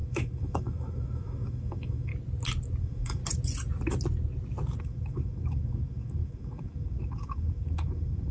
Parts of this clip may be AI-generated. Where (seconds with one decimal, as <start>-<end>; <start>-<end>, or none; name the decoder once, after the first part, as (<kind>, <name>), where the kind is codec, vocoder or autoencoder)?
0.0-2.1 (autoencoder, DAC-VAE); 2.8-3.2; 4.8-8.3